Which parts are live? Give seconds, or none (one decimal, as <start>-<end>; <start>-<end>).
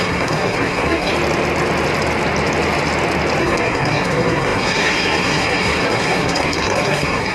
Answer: 1.1-3.4